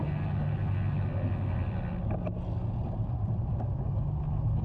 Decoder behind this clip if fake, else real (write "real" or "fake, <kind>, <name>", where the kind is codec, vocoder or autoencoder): real